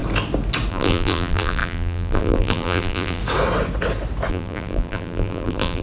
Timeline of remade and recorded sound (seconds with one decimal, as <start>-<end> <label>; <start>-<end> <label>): 0.0-0.7 recorded; 0.7-3.2 remade; 3.2-4.3 recorded; 4.3-5.8 remade

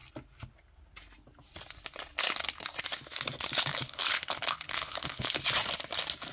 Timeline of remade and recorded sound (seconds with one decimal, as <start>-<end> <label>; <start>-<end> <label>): 0.0-3.7 recorded; 3.7-5.4 remade; 5.4-6.3 recorded

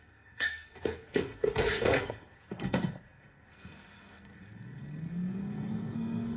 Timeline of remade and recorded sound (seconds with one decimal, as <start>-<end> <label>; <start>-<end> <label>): 0.0-6.4 remade

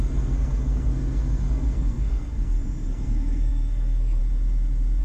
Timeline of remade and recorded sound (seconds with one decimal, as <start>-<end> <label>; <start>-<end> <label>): 0.0-4.2 remade; 4.2-5.0 recorded